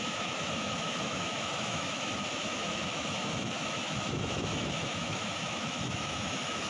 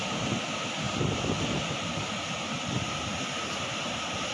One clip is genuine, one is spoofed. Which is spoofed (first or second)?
first